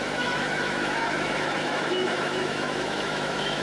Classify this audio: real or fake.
fake